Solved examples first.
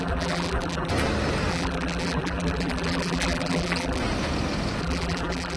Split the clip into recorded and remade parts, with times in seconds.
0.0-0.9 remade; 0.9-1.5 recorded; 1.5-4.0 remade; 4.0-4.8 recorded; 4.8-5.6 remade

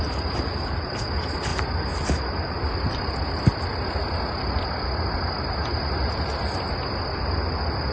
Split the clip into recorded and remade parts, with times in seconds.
0.0-7.9 recorded

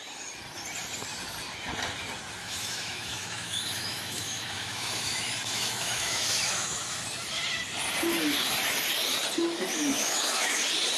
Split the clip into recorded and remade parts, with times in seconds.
0.0-2.4 recorded; 2.4-7.0 remade; 7.0-9.7 recorded; 9.7-10.6 remade; 10.6-11.0 recorded